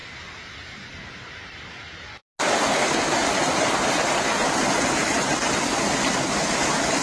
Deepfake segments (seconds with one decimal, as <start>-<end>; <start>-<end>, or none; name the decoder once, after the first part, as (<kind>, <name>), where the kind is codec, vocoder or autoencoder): none